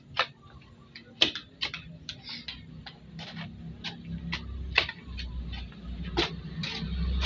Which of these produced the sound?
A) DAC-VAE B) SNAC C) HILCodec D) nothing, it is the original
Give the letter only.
D